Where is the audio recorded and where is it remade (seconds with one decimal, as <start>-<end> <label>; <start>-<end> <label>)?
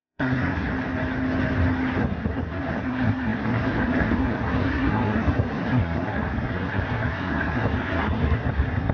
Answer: 0.0-0.7 remade; 0.7-2.0 recorded; 2.0-8.9 remade